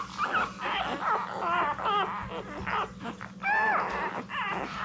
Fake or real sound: real